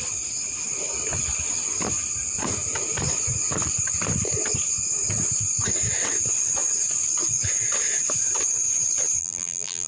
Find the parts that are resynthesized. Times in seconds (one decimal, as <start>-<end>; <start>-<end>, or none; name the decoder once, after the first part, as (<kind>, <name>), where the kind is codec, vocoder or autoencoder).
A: 9.2-9.9 (vocoder, BigVGAN v2)